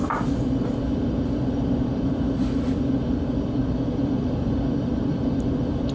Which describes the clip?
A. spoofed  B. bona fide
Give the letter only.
A